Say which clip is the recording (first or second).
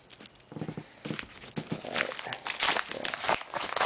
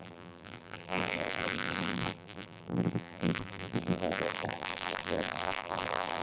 first